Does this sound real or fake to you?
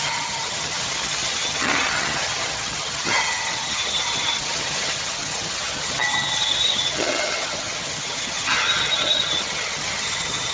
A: fake